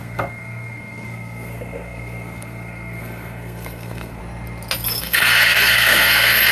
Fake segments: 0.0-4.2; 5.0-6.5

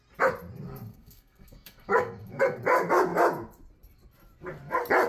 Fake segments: 0.9-2.6